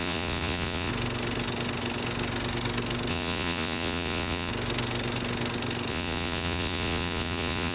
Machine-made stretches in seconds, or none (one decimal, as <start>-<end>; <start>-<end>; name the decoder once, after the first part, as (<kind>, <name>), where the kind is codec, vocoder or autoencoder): 0.0-0.9 (vocoder, Vocos); 3.1-4.5; 5.9-7.7